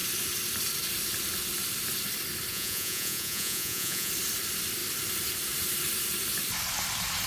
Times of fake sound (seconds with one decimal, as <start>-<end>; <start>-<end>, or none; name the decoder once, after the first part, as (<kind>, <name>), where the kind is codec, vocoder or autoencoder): 2.5-4.1 (vocoder, Vocos)